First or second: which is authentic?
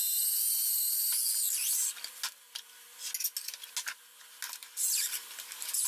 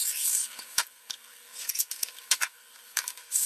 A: first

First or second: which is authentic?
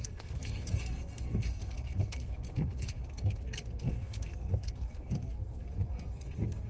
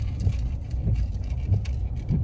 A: second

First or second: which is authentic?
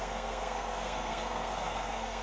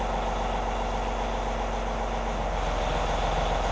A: second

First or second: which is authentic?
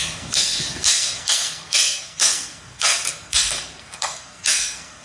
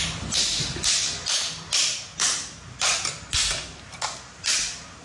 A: second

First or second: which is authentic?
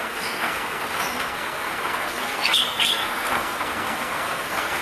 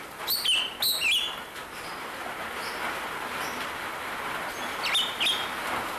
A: second